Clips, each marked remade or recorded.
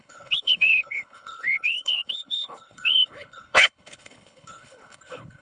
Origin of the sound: remade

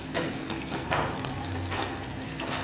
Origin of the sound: remade